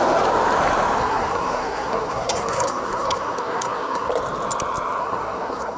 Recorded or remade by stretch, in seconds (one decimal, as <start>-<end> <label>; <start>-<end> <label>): 0.0-1.0 recorded; 1.0-4.1 remade; 4.1-5.0 recorded; 5.0-5.8 remade